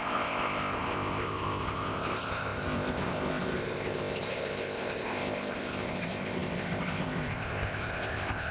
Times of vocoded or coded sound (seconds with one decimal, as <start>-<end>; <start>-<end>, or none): 0.0-8.5